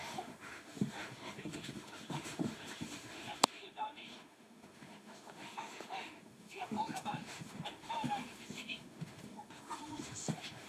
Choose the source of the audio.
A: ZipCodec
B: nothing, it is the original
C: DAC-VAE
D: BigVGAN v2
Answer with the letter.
C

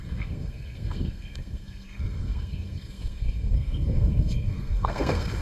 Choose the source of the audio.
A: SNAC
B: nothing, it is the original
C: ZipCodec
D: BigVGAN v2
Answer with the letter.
A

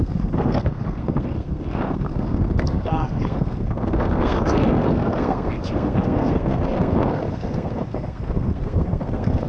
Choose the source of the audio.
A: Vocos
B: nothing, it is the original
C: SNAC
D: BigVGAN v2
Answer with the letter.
C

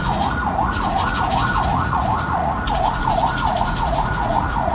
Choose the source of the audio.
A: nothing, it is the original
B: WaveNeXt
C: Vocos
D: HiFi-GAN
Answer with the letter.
C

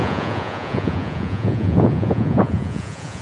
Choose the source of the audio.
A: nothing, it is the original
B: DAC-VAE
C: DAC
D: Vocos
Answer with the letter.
D